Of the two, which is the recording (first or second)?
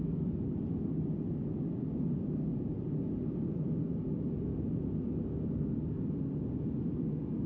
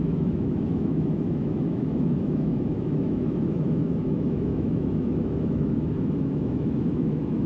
first